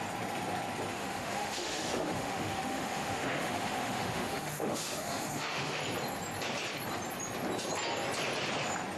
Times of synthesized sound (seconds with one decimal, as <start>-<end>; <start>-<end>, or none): 0.9-5.8